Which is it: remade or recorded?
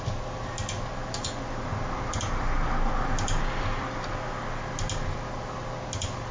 recorded